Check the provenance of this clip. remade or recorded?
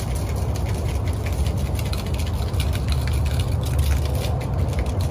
recorded